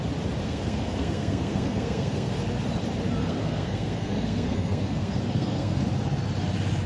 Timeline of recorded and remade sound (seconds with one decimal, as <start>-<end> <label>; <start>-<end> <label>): 0.0-0.4 recorded; 0.4-2.3 remade; 2.3-3.2 recorded; 3.2-5.8 remade; 5.8-6.9 recorded